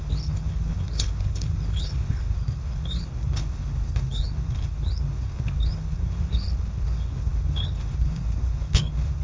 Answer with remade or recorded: remade